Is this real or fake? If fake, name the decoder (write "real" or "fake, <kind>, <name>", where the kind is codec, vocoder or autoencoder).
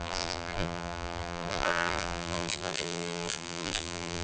fake, vocoder, BigVGAN v2